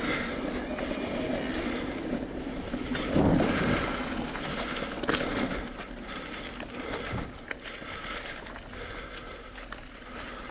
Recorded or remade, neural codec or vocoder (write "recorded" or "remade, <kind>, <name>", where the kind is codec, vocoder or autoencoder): recorded